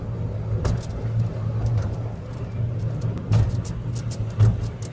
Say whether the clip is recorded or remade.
recorded